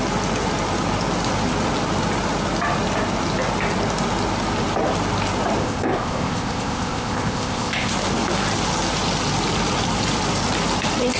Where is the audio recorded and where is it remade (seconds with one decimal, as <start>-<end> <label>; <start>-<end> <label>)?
0.0-5.6 recorded; 5.6-7.9 remade; 7.9-11.2 recorded